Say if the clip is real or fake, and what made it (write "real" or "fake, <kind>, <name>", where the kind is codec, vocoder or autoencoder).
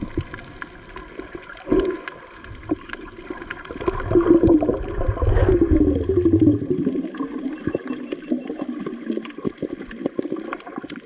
real